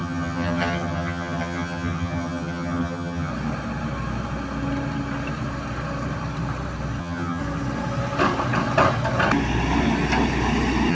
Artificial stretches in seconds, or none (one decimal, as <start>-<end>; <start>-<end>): 0.0-3.3; 7.0-7.4